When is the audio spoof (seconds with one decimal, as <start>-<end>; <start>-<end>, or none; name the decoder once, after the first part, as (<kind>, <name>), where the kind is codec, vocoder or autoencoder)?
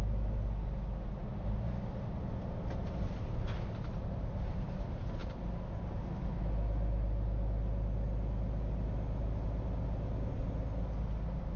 none